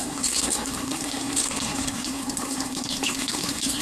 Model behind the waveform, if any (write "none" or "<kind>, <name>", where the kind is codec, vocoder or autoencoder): codec, SNAC